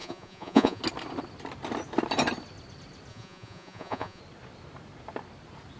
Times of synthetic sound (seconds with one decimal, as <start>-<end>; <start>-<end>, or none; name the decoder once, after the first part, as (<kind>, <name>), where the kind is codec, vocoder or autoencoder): 0.0-0.8 (vocoder, Vocos); 3.1-4.2